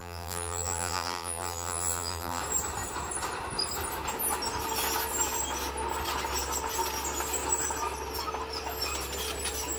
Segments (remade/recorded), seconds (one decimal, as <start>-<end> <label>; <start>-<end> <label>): 0.0-2.4 remade; 2.4-9.8 recorded